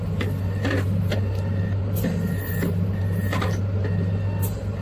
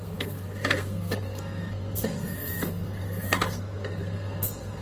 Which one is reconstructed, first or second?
second